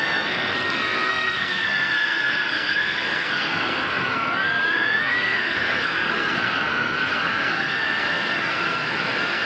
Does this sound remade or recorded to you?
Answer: remade